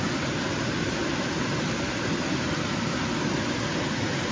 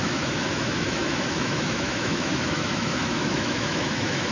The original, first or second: first